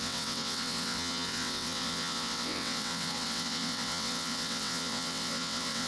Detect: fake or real fake